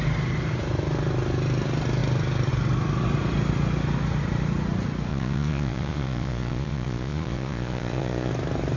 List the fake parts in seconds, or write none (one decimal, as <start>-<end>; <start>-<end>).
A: 5.1-8.3